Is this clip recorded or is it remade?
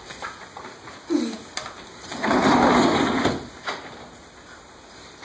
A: recorded